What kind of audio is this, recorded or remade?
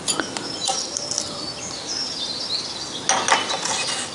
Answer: recorded